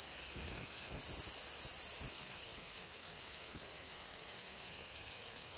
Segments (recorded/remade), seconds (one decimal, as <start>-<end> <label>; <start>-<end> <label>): 0.0-1.0 remade; 1.0-2.1 recorded; 2.1-5.6 remade